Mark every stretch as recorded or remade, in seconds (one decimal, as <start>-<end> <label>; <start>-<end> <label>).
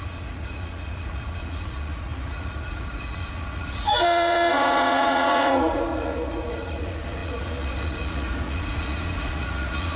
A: 0.0-10.0 remade